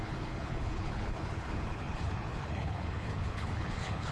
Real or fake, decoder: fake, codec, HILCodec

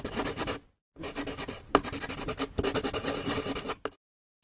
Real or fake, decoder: real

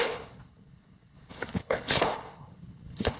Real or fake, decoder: fake, codec, HILCodec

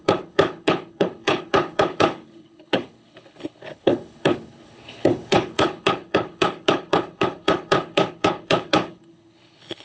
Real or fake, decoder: fake, codec, HILCodec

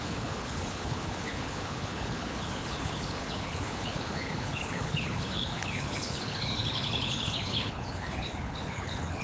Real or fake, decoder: fake, codec, HILCodec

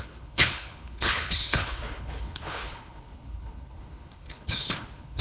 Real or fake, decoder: fake, codec, HILCodec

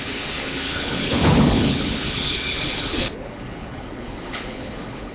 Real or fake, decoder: fake, codec, HILCodec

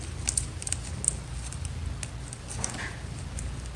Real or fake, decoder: real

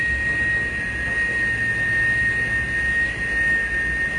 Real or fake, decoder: real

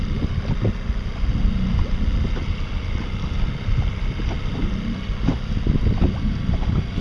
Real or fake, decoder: real